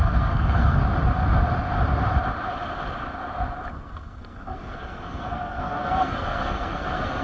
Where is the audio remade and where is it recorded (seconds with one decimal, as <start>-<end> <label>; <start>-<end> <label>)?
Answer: 0.0-0.8 remade; 0.8-3.7 recorded; 3.7-7.2 remade